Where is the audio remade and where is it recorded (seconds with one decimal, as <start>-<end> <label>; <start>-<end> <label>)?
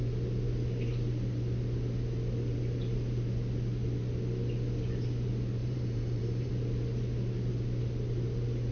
0.0-5.6 recorded; 5.6-6.5 remade; 6.5-8.7 recorded